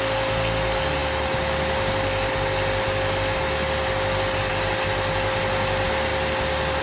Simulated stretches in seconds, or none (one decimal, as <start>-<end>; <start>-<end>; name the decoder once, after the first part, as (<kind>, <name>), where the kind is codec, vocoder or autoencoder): none